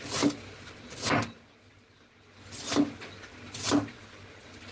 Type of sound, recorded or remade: recorded